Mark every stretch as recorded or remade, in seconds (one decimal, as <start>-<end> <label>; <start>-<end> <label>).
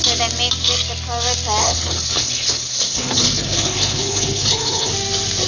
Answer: 0.0-1.6 recorded; 1.6-4.9 remade; 4.9-5.5 recorded